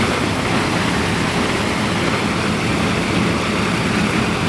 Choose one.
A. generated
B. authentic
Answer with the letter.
B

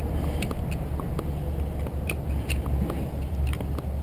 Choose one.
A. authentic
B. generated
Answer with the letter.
A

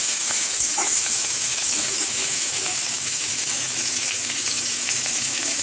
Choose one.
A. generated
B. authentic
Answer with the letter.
A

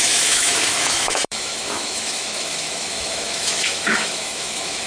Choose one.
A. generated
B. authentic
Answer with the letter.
A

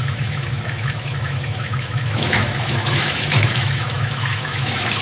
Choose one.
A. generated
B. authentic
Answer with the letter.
A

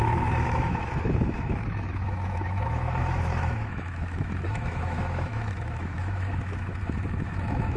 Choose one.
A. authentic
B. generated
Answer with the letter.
B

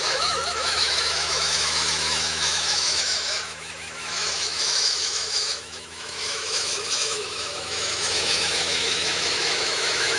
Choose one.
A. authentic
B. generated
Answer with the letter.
B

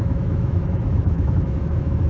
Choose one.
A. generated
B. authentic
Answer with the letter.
A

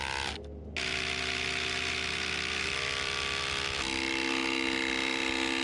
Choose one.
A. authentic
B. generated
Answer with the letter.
A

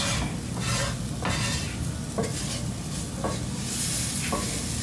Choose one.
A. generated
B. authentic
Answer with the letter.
B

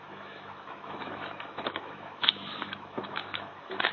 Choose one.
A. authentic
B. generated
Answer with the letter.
B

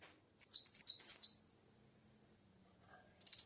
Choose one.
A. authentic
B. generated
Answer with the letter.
A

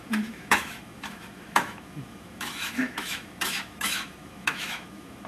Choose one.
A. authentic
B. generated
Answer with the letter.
B